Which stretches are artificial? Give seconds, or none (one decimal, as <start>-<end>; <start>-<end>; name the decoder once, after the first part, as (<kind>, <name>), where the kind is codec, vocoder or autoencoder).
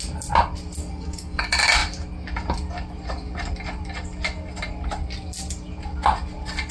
0.8-1.4 (codec, DAC)